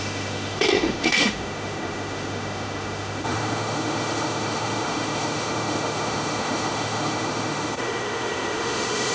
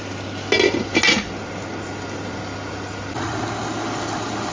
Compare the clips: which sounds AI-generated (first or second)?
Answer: first